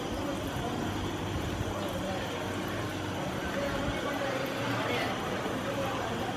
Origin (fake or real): real